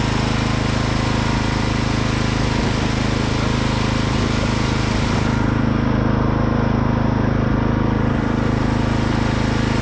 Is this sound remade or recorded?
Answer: recorded